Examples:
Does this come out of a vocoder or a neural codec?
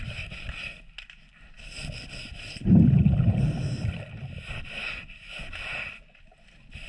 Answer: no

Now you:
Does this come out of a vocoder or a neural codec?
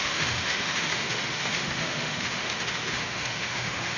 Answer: yes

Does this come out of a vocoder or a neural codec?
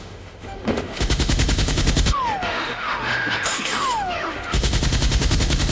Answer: yes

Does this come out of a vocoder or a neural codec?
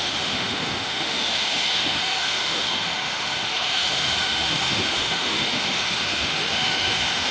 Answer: yes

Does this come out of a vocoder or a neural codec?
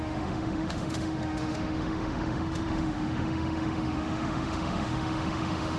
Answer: yes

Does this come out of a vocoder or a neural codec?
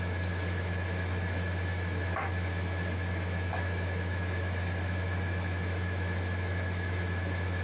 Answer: yes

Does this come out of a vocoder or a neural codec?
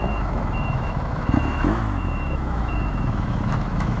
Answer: yes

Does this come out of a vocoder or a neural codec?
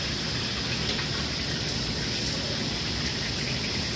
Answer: no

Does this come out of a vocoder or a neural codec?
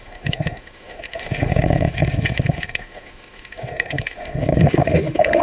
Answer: yes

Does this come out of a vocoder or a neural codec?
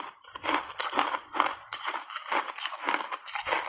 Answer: no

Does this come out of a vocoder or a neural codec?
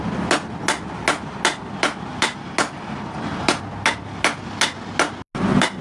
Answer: no